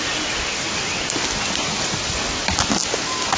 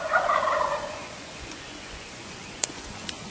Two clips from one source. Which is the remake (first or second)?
second